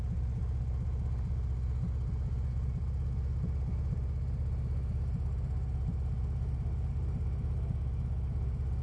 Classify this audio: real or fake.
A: real